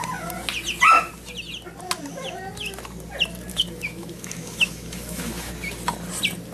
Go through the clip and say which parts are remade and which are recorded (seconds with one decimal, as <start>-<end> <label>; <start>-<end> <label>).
0.0-3.5 recorded; 3.5-5.5 remade; 5.5-6.5 recorded